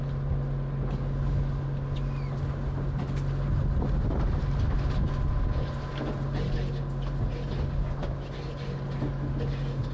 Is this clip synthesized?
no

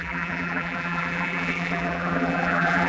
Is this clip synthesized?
yes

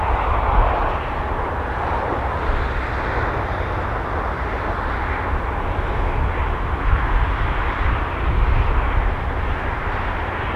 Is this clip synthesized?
no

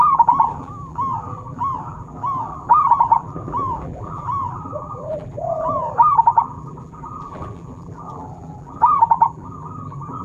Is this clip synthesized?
yes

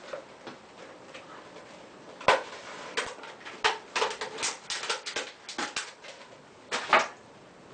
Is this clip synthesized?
no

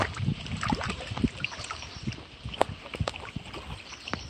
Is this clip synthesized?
yes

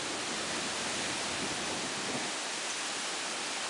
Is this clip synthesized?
no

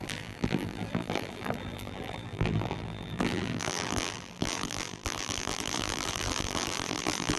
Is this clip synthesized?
yes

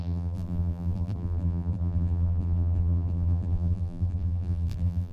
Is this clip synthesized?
yes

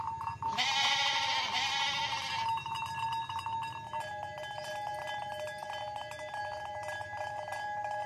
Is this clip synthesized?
no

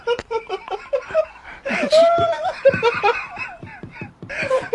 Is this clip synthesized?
yes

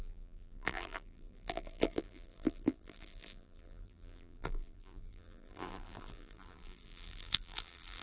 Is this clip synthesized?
yes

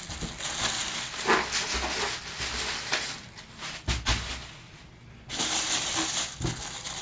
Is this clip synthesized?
no